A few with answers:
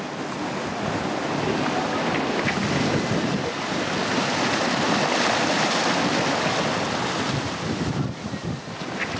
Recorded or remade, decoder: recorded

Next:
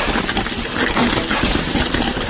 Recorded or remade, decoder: recorded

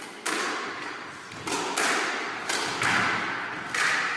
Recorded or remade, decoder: recorded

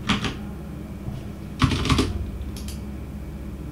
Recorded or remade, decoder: recorded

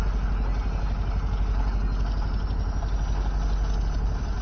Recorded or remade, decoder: recorded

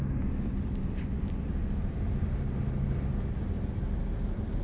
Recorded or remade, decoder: recorded